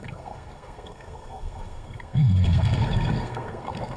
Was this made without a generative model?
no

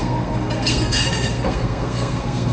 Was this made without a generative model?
no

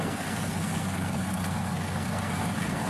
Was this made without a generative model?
no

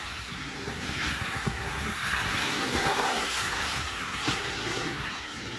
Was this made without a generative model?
no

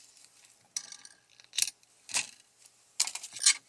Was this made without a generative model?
yes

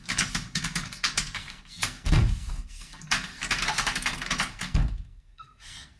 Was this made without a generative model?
no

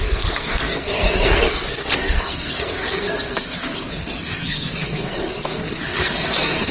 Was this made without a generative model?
no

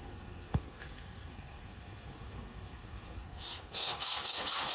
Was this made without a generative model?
no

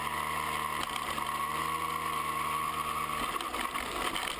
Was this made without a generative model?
yes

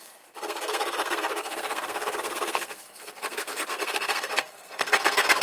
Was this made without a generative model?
no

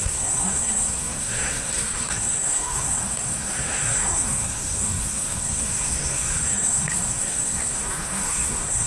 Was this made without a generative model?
no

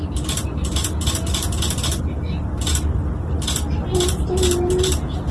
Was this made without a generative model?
yes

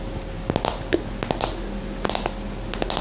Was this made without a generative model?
yes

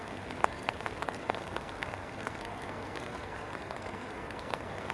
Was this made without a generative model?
no